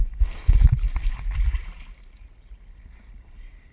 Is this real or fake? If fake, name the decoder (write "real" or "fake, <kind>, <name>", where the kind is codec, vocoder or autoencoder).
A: real